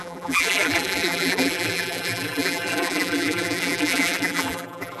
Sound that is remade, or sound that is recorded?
remade